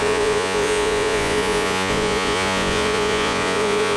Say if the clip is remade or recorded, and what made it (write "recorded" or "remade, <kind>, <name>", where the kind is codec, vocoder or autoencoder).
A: remade, vocoder, Vocos